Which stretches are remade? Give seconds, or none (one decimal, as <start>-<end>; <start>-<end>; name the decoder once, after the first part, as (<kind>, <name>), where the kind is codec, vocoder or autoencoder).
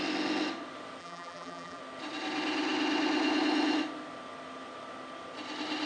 1.0-1.8 (vocoder, BigVGAN v2)